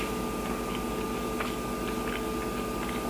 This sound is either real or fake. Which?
real